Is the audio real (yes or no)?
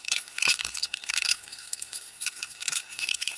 no